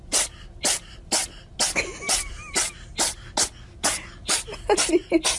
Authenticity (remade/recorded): recorded